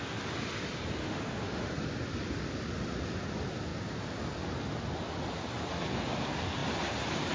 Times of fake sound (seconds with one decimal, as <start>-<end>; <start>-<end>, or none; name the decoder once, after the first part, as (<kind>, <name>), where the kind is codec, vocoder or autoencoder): 1.0-1.7 (autoencoder, DAC-VAE)